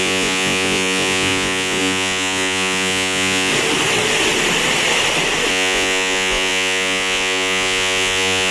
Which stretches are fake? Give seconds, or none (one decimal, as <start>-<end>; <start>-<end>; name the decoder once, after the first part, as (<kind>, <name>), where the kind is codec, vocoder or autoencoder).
0.0-3.5 (vocoder, Vocos); 5.5-8.5